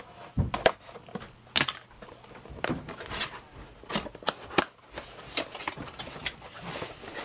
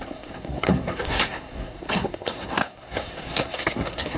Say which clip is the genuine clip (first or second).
first